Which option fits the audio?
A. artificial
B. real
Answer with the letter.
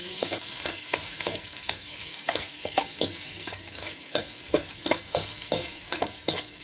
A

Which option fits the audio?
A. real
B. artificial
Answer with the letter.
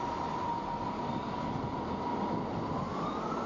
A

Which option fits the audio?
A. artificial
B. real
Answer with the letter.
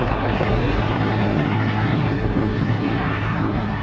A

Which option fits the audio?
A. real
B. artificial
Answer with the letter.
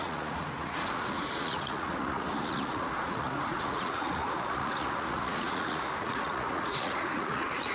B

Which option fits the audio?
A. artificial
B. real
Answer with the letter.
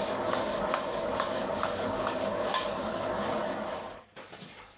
A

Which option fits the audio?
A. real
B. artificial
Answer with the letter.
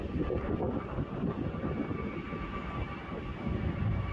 A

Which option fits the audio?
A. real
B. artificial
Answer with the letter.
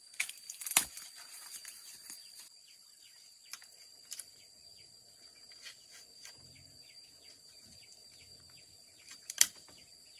B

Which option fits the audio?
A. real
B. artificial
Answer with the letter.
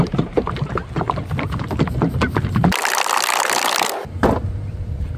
A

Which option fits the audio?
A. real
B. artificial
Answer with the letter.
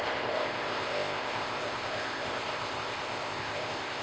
B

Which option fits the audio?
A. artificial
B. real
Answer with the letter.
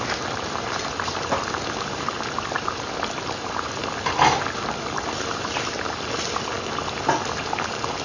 B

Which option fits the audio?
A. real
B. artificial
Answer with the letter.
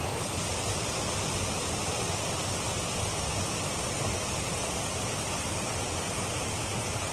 A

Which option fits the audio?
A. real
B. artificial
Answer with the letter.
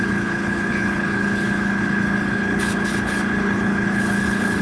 B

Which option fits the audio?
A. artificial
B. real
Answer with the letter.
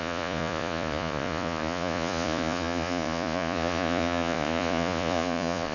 A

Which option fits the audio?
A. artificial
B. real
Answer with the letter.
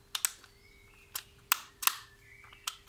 B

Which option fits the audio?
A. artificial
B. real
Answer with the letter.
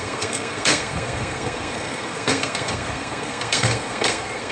A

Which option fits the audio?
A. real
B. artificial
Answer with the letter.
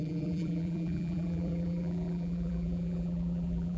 B